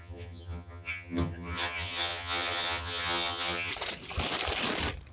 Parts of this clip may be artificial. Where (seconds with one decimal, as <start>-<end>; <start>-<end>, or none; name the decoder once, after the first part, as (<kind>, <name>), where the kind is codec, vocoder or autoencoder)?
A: 0.0-3.7 (vocoder, HiFi-GAN)